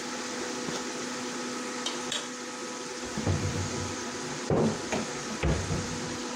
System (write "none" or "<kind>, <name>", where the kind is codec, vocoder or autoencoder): vocoder, BigVGAN v2